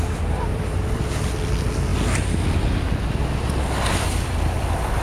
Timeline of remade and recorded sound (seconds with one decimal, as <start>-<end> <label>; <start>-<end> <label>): 0.0-5.0 remade